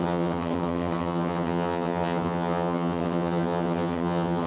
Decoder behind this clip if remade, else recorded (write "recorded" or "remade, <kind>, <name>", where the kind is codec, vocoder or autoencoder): remade, vocoder, HiFi-GAN